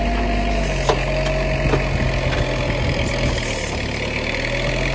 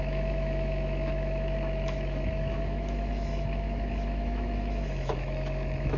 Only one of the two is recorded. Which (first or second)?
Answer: first